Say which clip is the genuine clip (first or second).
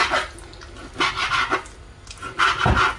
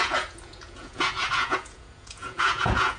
first